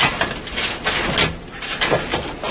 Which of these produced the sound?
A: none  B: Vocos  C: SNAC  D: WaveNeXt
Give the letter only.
A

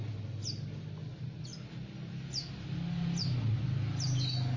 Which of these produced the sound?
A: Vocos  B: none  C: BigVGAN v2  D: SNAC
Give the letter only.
B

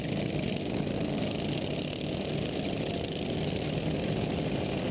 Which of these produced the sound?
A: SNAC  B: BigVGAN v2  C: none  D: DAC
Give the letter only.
C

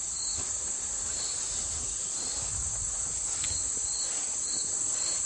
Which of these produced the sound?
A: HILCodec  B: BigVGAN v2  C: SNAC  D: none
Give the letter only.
D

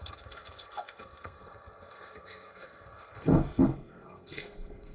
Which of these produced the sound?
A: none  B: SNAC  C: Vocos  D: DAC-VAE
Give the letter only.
B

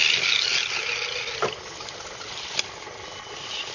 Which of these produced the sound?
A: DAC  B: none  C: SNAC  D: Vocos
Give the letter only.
B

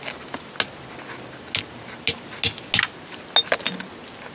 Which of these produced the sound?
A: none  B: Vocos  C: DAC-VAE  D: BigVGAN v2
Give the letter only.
A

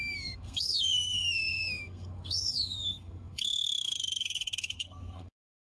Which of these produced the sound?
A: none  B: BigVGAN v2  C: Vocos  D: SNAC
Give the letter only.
D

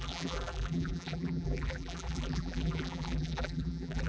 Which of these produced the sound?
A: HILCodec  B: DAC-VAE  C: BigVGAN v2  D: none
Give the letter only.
C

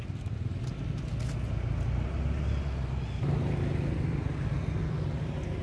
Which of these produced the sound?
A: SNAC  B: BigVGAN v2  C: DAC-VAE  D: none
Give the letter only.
D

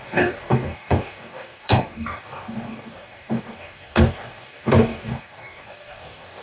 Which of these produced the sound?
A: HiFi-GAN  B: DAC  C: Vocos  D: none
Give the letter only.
B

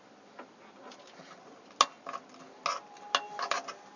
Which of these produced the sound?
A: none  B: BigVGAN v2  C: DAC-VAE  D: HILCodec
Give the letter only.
A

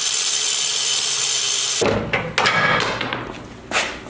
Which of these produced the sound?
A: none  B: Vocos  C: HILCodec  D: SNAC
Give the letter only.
A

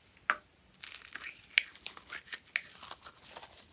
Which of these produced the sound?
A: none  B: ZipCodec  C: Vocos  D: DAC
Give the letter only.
A